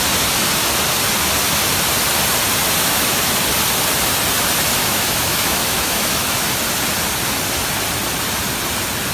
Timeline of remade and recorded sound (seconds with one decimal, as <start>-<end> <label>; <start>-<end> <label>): 0.0-2.8 recorded; 2.8-3.3 remade; 3.3-4.8 recorded; 4.8-6.4 remade; 6.4-9.1 recorded